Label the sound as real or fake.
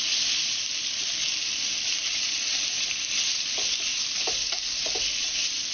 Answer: real